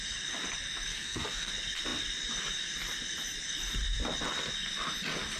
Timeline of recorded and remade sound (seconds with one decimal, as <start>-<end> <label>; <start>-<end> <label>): 0.0-0.9 recorded; 0.9-1.5 remade; 1.5-5.4 recorded